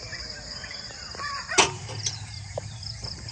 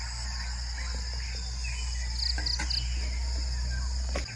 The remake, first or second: first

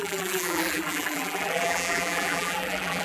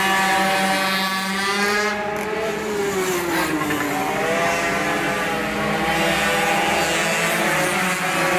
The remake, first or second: first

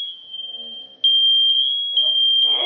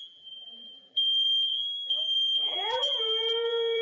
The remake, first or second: second